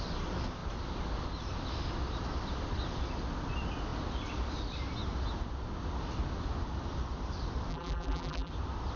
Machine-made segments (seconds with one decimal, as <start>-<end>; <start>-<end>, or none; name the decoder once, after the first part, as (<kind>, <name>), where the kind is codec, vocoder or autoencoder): 7.7-8.5 (vocoder, BigVGAN v2)